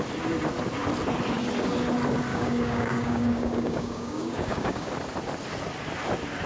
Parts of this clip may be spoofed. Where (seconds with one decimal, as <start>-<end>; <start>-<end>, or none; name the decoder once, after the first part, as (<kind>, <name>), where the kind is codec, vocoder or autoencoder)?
2.3-4.9 (codec, DAC)